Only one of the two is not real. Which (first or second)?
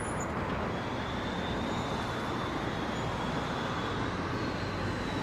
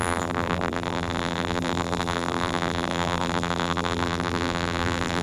second